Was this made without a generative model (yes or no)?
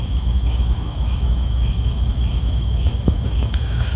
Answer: no